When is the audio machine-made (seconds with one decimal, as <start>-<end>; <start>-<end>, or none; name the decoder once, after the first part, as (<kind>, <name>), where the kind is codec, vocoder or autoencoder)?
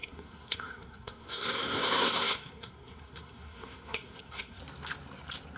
0.0-4.6 (codec, SNAC)